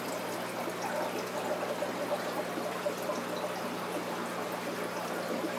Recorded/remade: recorded